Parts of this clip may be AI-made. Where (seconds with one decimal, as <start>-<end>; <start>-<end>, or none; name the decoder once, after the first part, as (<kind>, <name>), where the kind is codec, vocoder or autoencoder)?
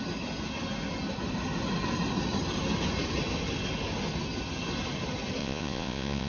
5.4-6.3 (vocoder, Vocos)